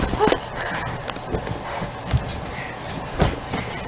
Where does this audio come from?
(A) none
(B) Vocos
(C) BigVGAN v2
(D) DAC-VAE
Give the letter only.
A